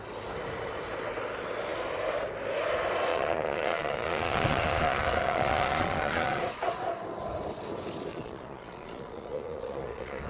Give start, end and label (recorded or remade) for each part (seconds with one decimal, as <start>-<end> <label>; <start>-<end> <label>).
0.0-3.1 recorded; 3.1-6.4 remade; 6.4-8.1 recorded; 8.1-10.3 remade